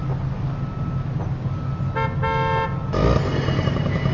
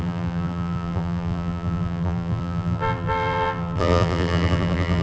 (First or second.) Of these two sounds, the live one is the first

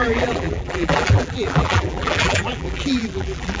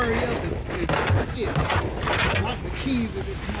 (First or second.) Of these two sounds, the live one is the second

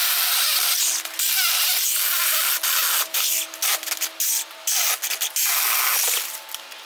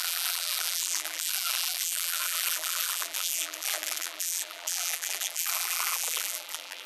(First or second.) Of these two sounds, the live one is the first